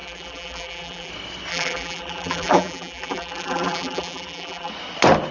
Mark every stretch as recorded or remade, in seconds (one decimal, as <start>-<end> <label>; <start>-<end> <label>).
0.0-1.1 remade; 1.1-1.5 recorded; 1.5-4.7 remade; 4.7-5.3 recorded